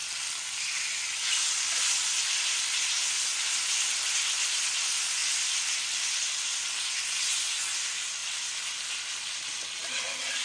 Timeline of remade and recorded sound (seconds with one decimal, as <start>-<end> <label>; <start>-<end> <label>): 0.0-10.4 recorded